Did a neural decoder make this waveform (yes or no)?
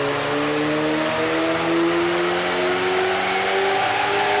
no